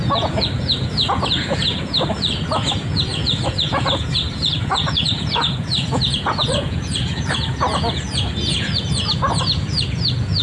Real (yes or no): no